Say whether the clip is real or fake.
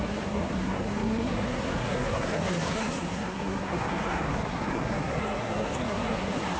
fake